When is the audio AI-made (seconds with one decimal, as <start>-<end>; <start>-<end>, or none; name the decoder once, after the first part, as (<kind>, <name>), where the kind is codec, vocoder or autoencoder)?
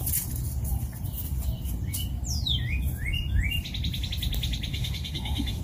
4.7-5.6 (autoencoder, DAC-VAE)